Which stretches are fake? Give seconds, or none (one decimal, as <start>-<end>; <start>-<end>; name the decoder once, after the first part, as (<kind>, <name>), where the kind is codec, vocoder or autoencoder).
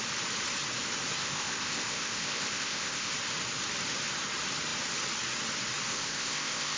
1.2-3.1 (codec, ZipCodec); 5.9-6.8